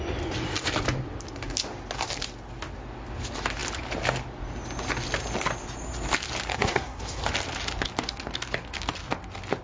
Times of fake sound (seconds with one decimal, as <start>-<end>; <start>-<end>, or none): 6.5-7.2